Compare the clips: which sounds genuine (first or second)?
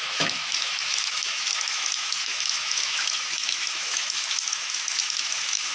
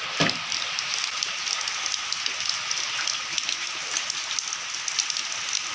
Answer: second